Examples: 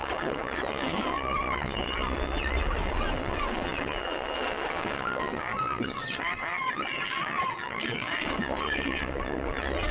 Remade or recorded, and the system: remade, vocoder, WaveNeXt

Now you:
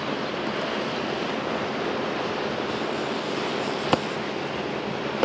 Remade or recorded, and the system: recorded